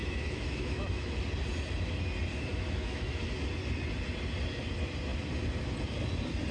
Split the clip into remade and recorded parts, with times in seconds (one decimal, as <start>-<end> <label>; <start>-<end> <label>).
0.0-1.2 remade; 1.2-2.5 recorded; 2.5-3.2 remade; 3.2-6.5 recorded